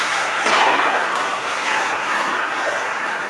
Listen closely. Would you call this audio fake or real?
fake